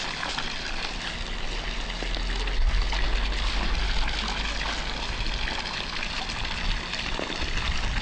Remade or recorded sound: recorded